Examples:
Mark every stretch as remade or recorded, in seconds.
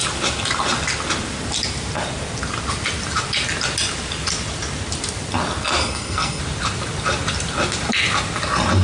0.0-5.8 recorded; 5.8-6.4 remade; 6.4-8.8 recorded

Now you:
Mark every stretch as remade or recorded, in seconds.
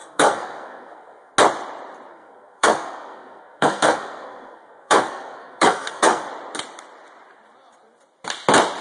0.0-1.3 remade; 1.3-2.1 recorded; 2.1-6.3 remade; 6.3-8.8 recorded